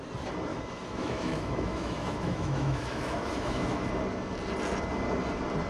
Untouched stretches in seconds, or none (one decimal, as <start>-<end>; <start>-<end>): 0.0-0.5; 3.9-5.7